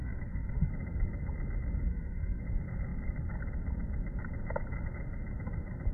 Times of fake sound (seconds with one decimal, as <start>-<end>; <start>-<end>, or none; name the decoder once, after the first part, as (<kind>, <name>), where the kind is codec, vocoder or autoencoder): 0.0-0.7 (codec, SNAC); 1.9-2.4